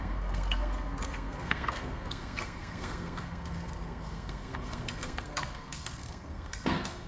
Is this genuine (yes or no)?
no